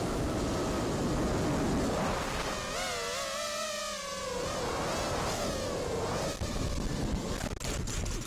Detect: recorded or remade recorded